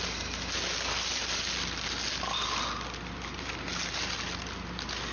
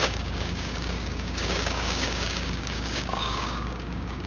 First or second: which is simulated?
second